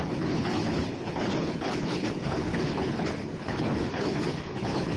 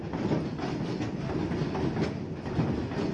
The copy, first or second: first